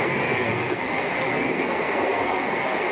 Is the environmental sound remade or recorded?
remade